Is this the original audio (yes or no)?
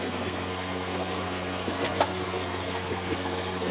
no